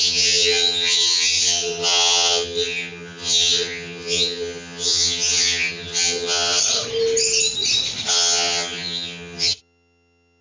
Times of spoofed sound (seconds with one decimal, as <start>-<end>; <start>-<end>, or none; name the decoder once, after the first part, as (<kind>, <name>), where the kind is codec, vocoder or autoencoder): 0.0-6.6 (vocoder, HiFi-GAN); 8.1-10.4